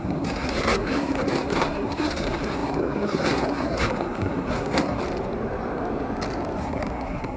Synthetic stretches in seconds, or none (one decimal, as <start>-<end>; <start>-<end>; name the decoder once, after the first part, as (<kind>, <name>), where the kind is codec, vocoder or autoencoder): 0.0-5.0 (codec, SNAC); 6.6-7.4